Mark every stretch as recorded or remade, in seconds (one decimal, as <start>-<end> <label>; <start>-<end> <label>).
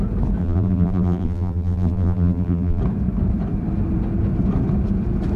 0.0-0.4 recorded; 0.4-2.8 remade; 2.8-5.4 recorded